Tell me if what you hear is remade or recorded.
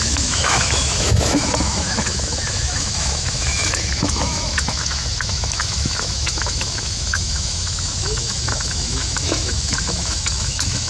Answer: remade